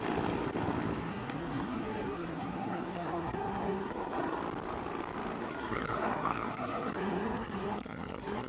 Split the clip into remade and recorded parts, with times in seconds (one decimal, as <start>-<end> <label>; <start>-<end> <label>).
0.0-1.1 recorded; 1.1-4.4 remade; 4.4-5.4 recorded; 5.4-8.5 remade